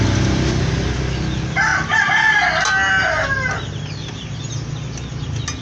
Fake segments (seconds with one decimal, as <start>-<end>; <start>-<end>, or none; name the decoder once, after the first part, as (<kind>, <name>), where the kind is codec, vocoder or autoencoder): none